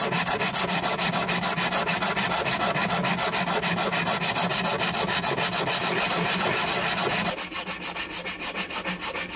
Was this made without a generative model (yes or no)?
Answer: yes